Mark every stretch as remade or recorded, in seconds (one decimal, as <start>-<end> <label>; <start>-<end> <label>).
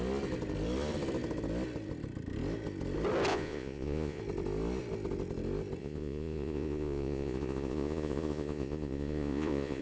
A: 0.0-3.3 recorded; 3.3-4.2 remade; 4.2-5.8 recorded; 5.8-9.8 remade